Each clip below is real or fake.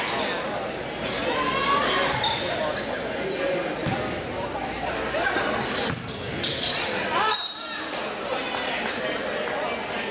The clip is real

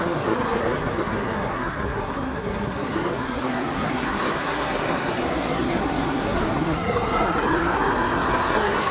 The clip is fake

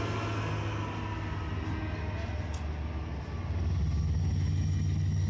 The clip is real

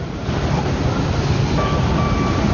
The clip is real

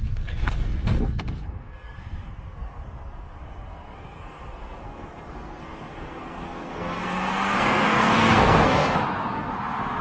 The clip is fake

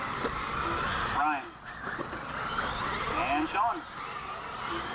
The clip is real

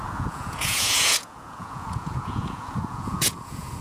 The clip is fake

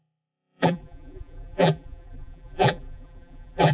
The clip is fake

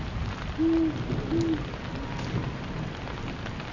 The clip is real